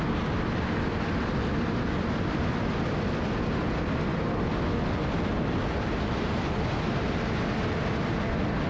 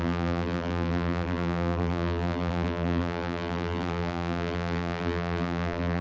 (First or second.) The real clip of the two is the first